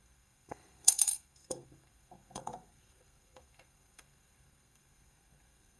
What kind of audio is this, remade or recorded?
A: remade